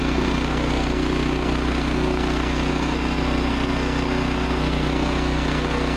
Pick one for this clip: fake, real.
fake